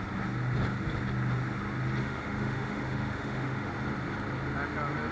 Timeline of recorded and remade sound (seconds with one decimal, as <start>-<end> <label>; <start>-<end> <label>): 0.0-2.0 recorded; 2.0-3.7 remade; 3.7-5.1 recorded